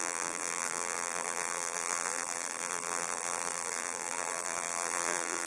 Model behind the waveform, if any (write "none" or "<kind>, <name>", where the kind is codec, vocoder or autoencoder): vocoder, BigVGAN v2